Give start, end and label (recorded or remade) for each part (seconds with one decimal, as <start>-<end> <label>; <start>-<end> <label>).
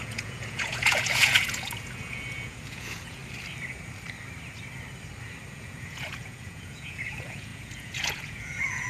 0.0-3.2 remade; 3.2-5.5 recorded; 5.5-8.9 remade